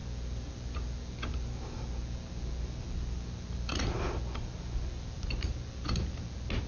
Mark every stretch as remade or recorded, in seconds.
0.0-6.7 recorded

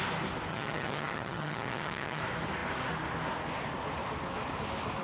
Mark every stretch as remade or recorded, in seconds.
0.0-0.5 recorded; 0.5-2.2 remade; 2.2-5.0 recorded